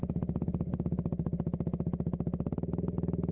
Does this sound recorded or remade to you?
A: recorded